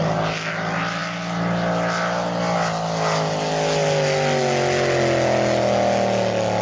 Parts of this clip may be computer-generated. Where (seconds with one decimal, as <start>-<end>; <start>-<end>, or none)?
none

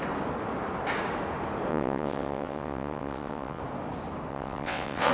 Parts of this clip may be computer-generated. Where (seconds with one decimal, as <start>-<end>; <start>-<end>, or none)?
1.7-3.6; 4.3-5.1

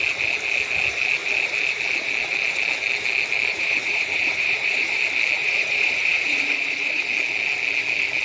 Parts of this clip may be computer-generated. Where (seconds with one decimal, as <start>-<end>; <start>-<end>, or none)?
3.5-5.0; 5.4-7.0

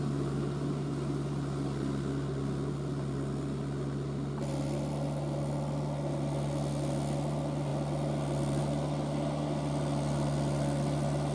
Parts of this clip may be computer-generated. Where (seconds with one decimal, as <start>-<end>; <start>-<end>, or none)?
none

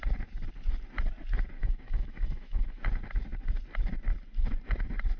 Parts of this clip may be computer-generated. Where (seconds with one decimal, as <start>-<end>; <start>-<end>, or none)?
1.6-2.8